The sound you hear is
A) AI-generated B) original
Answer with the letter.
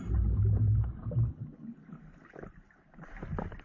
B